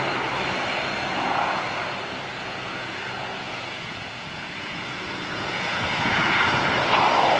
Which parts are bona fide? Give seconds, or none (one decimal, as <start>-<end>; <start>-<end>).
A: 0.0-1.1; 1.8-2.3; 6.7-7.4